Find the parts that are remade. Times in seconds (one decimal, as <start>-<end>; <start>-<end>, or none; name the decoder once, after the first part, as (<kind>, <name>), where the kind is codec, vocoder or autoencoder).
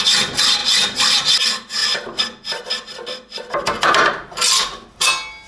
none